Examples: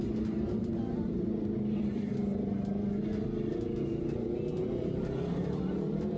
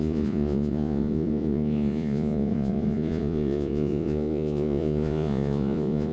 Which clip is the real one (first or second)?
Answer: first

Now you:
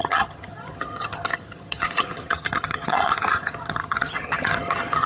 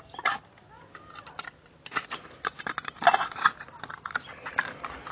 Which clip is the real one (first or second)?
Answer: second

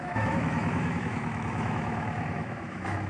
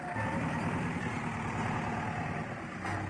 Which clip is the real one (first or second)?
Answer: second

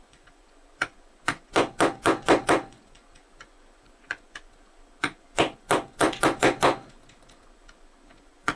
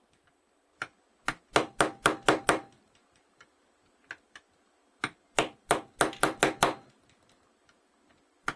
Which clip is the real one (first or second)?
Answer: second